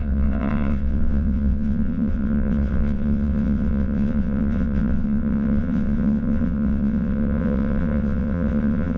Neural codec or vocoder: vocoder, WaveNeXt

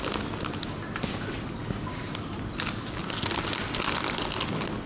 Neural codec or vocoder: none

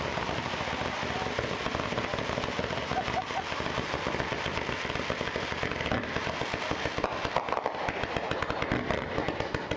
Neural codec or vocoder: none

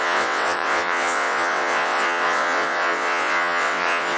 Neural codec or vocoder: vocoder, WaveNeXt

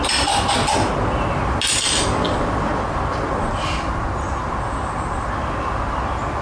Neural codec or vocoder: none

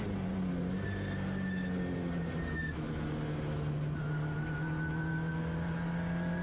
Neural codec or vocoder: none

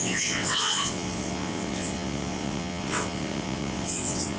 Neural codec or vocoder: vocoder, WaveNeXt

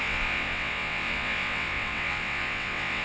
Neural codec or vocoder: vocoder, WaveNeXt